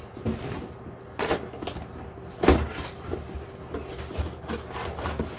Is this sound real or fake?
real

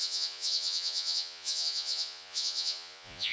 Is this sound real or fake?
fake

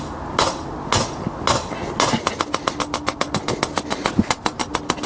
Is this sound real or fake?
real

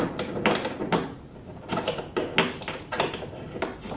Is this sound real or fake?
real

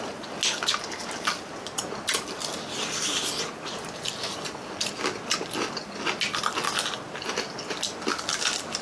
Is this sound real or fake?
real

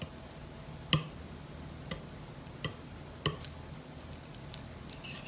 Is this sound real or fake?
real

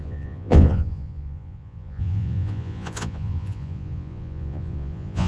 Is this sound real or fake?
fake